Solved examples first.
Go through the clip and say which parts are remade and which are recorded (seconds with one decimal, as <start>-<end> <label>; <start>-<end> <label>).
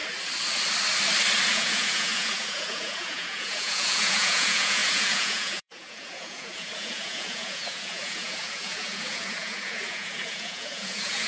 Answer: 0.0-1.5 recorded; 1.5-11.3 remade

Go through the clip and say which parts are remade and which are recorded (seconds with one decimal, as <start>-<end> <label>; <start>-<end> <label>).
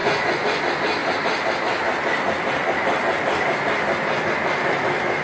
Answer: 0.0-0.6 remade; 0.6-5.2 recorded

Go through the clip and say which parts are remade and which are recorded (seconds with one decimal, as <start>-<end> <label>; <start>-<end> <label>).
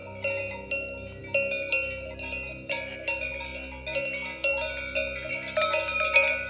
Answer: 0.0-6.5 recorded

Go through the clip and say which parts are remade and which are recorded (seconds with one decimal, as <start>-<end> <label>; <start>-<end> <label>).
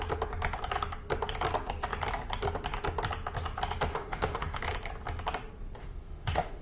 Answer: 0.0-3.9 recorded; 3.9-4.6 remade; 4.6-5.8 recorded; 5.8-6.6 remade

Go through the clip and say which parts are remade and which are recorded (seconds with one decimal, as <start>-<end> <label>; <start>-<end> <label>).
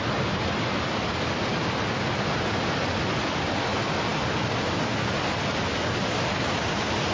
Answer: 0.0-7.1 recorded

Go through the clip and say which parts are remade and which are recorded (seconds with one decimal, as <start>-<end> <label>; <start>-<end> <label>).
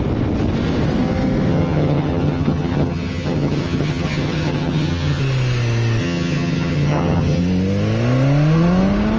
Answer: 0.0-1.5 recorded; 1.5-5.2 remade; 5.2-6.0 recorded; 6.0-7.4 remade; 7.4-9.2 recorded